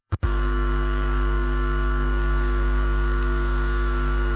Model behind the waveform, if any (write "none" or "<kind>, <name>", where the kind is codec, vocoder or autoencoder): codec, DAC